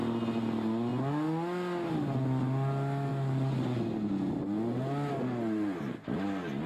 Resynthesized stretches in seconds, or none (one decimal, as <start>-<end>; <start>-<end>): none

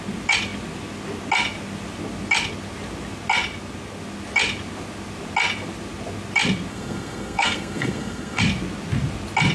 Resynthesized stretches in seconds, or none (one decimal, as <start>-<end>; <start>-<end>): 6.7-8.4

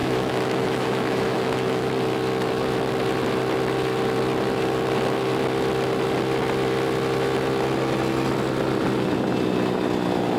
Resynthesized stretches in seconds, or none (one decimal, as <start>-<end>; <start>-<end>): 0.0-1.9

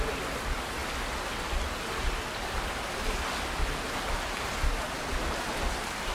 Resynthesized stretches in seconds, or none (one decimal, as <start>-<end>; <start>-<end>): none

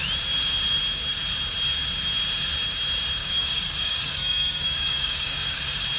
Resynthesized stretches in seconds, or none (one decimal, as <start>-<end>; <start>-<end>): 3.2-5.6